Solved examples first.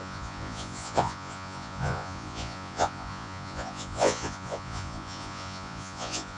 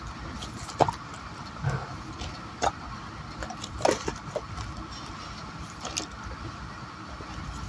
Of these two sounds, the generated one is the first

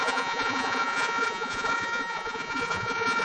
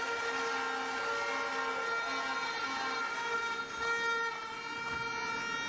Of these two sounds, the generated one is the first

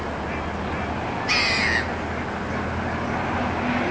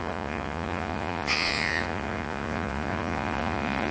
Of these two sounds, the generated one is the second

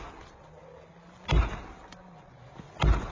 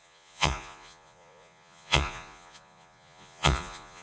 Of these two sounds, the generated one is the second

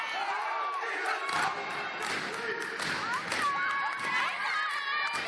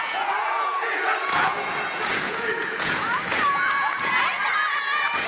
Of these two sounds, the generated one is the second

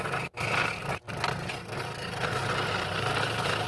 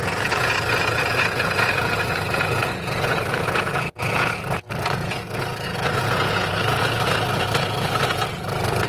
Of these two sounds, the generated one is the second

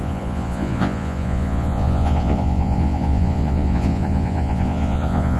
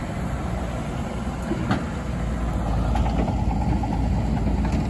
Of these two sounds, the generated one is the first